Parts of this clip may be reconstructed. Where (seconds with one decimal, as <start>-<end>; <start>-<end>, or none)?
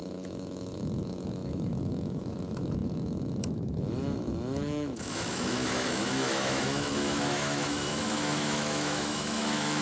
0.0-9.8